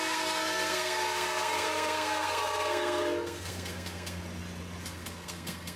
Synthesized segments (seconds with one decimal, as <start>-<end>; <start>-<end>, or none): 0.0-4.2; 4.8-5.8